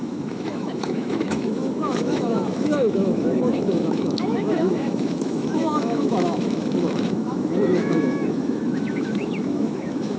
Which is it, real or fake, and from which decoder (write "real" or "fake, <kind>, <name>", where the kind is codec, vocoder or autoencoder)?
fake, autoencoder, DAC-VAE